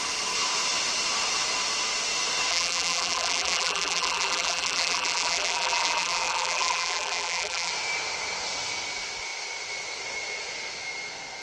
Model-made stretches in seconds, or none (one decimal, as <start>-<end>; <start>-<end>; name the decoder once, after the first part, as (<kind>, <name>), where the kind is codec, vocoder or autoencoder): 2.5-7.7 (vocoder, BigVGAN v2)